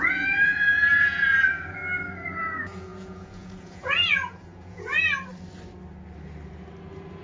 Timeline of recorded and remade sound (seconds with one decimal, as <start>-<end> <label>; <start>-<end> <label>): 0.0-1.8 remade; 1.8-2.4 recorded; 2.4-4.9 remade; 4.9-7.2 recorded